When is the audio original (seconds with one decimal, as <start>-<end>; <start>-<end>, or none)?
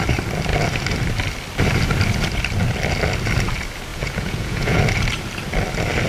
0.0-3.9; 4.8-6.1